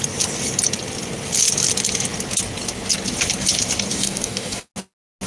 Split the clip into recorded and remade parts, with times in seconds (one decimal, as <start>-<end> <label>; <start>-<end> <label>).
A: 0.0-3.9 recorded; 3.9-4.7 remade; 4.7-5.3 recorded